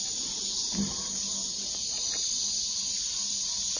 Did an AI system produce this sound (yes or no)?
yes